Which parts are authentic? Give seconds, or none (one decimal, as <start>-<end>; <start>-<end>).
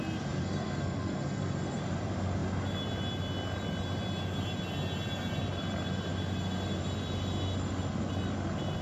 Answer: 0.0-0.4; 1.8-8.8